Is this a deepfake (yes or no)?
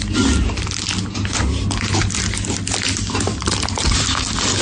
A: no